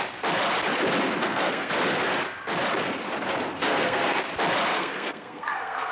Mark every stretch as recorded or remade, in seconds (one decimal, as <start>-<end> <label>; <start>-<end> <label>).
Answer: 0.0-1.2 recorded; 1.2-1.7 remade; 1.7-3.6 recorded; 3.6-4.2 remade; 4.2-4.7 recorded; 4.7-5.9 remade

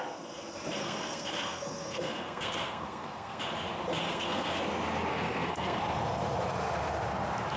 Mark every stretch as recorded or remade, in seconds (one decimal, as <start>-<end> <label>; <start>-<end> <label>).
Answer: 0.0-0.8 recorded; 0.8-3.4 remade; 3.4-4.0 recorded; 4.0-4.6 remade; 4.6-5.1 recorded; 5.1-5.8 remade; 5.8-7.6 recorded

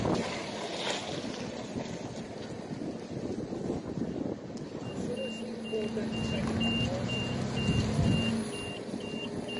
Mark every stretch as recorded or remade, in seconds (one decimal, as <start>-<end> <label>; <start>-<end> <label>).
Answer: 0.0-9.6 recorded

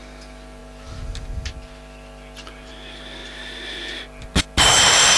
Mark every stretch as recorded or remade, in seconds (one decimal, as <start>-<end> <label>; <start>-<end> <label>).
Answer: 0.0-5.2 recorded

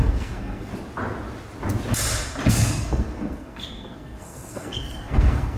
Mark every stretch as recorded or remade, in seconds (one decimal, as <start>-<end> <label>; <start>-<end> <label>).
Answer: 0.0-0.7 remade; 0.7-2.5 recorded; 2.5-5.6 remade

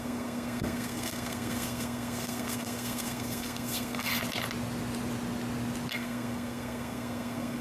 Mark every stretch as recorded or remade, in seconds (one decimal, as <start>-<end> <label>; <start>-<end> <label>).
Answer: 0.0-4.1 remade; 4.1-5.9 recorded; 5.9-7.6 remade

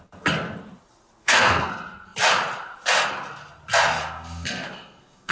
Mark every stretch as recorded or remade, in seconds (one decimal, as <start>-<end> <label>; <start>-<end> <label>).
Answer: 0.0-1.2 recorded; 1.2-1.7 remade; 1.7-4.0 recorded; 4.0-5.3 remade